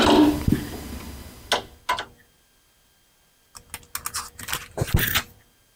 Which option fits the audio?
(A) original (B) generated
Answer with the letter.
A